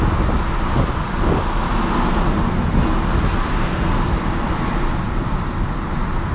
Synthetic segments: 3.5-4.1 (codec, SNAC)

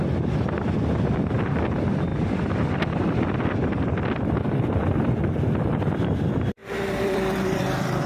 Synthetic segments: 2.1-5.8 (vocoder, BigVGAN v2); 6.6-7.6

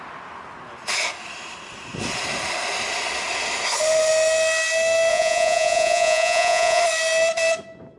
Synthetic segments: 5.1-6.8 (vocoder, Vocos)

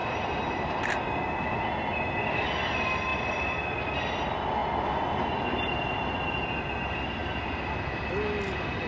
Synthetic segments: 0.0-0.8 (vocoder, BigVGAN v2); 3.1-4.0